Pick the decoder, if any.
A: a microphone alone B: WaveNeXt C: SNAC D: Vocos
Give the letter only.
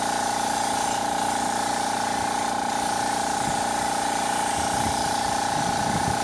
A